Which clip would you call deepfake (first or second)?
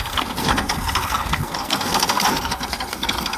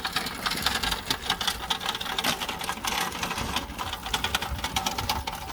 first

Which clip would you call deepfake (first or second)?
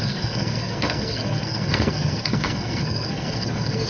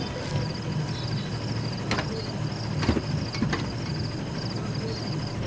first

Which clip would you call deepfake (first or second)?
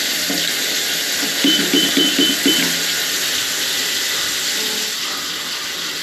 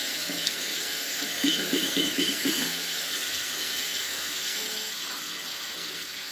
second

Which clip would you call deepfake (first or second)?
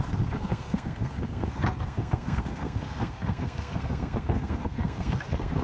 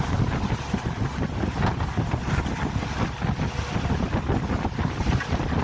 first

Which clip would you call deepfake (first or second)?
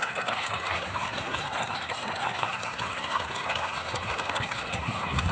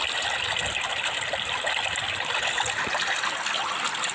first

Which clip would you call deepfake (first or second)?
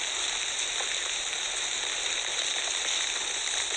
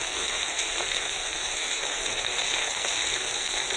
second